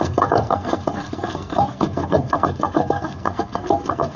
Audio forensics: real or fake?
fake